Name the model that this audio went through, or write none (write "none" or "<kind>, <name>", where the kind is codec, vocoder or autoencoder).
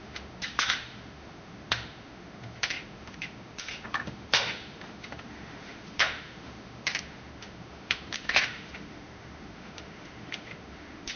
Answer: autoencoder, DAC-VAE